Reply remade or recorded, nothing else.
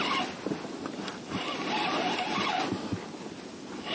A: recorded